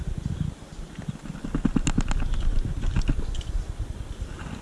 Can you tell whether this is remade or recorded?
recorded